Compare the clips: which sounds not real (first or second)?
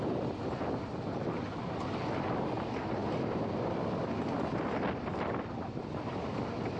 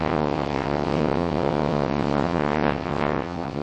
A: second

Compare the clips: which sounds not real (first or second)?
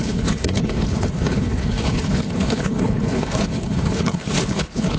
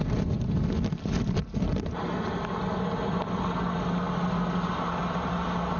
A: first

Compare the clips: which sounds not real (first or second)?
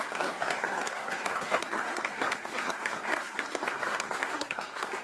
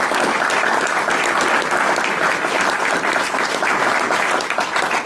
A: first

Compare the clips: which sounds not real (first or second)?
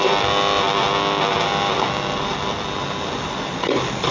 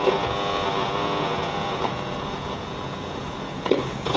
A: second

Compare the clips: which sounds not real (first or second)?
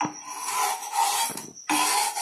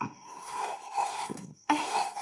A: second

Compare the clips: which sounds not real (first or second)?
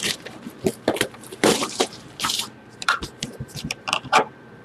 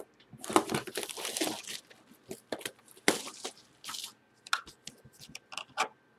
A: first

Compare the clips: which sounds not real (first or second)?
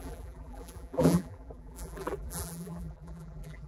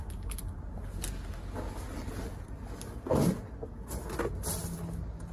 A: first